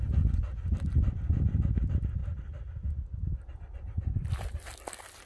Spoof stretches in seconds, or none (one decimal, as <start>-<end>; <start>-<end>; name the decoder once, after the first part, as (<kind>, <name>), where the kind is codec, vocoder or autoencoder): none